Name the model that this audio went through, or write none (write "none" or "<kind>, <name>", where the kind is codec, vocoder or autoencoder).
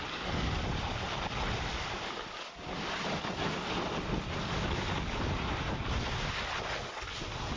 none